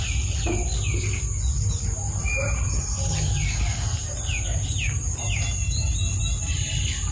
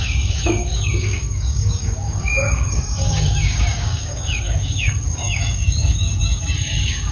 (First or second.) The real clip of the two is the first